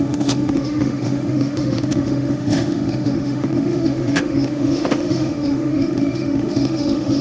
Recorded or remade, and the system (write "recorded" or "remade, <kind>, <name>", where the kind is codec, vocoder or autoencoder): remade, autoencoder, DAC-VAE